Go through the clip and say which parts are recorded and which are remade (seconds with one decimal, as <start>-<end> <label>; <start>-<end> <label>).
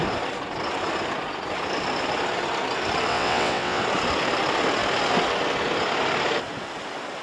0.0-3.1 recorded; 3.1-3.8 remade; 3.8-7.2 recorded